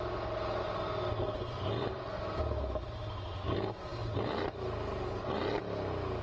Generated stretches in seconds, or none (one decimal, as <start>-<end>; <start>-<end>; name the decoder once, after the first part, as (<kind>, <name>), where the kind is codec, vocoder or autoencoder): none